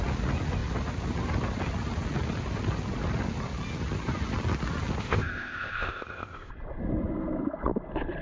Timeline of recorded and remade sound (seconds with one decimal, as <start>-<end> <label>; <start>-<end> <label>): 0.0-5.0 recorded; 5.0-6.5 remade; 6.5-8.2 recorded